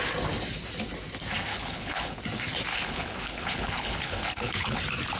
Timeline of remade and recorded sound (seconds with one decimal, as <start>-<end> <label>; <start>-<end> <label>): 0.0-1.5 recorded; 1.5-2.2 remade; 2.2-2.7 recorded; 2.7-4.8 remade; 4.8-5.2 recorded